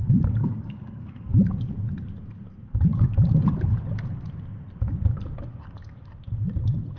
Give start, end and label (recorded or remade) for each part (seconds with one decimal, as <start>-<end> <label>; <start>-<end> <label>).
0.0-0.4 recorded; 0.4-1.3 remade; 1.3-7.0 recorded